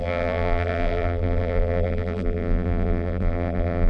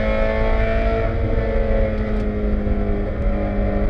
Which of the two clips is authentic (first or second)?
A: second